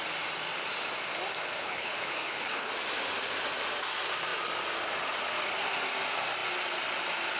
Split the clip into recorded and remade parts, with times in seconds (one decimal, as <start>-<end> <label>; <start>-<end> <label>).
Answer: 0.0-1.6 recorded; 1.6-2.7 remade; 2.7-7.4 recorded